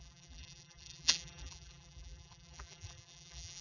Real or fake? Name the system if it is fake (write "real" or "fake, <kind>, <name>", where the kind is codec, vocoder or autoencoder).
fake, vocoder, BigVGAN v2